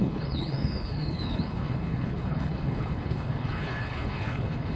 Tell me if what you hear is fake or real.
fake